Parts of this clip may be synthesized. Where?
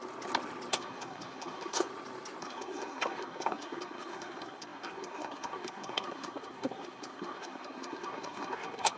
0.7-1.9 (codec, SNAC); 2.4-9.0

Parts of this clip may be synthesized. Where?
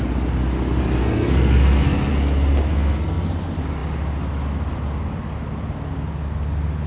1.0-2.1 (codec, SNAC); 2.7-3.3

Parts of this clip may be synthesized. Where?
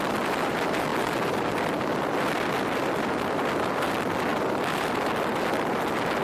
none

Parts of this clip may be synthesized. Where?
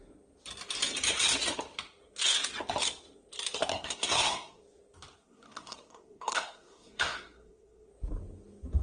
3.7-4.6 (codec, SNAC); 5.2-7.9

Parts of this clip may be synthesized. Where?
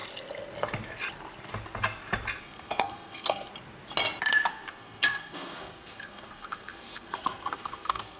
2.4-3.5 (codec, SNAC); 4.5-8.2